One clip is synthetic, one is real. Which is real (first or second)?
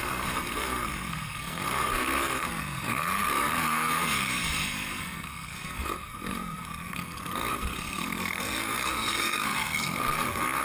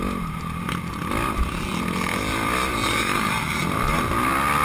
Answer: second